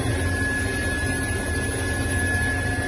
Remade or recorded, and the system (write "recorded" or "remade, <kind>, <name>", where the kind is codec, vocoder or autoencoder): recorded